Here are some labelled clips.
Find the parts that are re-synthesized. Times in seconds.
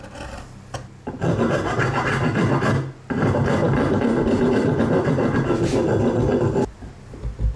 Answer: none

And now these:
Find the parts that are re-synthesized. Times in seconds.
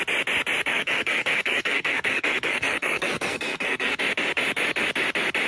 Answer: 0.7-4.0 (codec, SNAC)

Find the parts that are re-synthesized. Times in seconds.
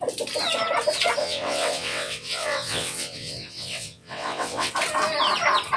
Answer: 1.2-4.7 (vocoder, WaveNeXt)